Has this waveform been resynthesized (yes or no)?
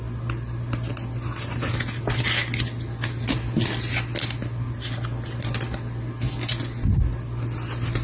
no